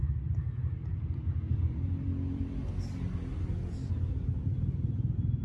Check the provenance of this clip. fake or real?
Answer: real